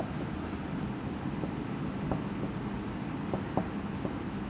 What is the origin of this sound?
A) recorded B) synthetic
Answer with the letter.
A